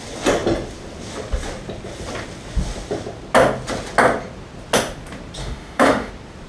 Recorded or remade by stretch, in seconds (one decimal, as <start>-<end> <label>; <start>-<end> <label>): 0.0-5.4 recorded; 5.4-6.1 remade; 6.1-6.5 recorded